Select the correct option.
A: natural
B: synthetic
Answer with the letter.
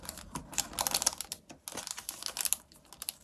A